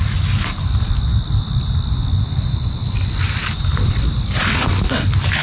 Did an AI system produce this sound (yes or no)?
no